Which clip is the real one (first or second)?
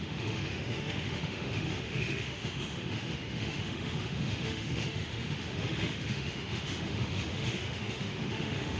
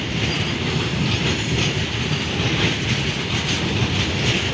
second